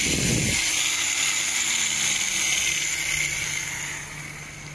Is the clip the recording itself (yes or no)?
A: yes